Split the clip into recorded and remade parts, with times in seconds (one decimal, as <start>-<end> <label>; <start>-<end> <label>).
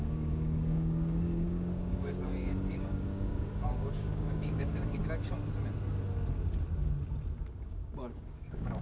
0.0-5.0 remade; 5.0-7.5 recorded; 7.5-8.8 remade